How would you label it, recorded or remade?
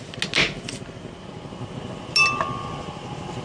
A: recorded